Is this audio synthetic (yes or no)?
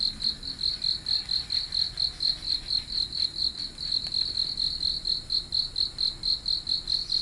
no